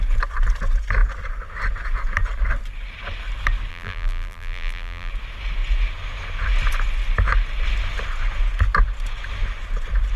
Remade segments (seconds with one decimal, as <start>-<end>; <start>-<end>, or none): 3.7-5.1